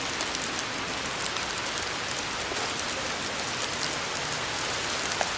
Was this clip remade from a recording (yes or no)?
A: no